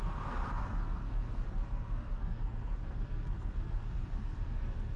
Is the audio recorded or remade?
remade